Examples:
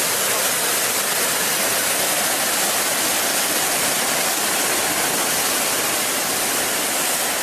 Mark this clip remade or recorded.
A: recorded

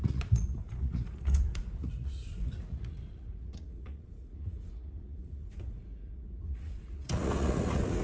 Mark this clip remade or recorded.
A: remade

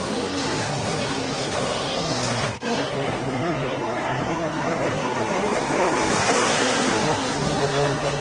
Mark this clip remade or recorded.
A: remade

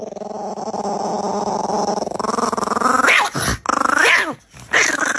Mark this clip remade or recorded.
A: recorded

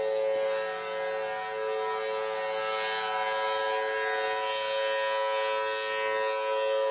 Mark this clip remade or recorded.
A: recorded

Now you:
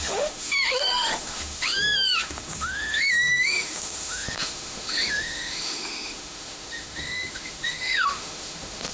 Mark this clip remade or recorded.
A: remade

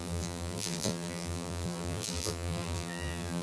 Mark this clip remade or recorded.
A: remade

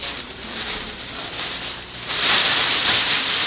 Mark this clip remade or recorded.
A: remade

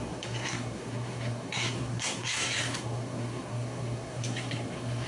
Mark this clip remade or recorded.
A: remade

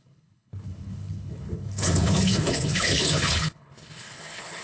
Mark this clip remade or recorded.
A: remade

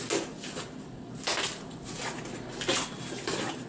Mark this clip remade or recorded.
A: recorded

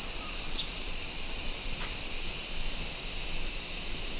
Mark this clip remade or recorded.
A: recorded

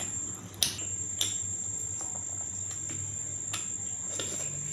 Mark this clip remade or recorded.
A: recorded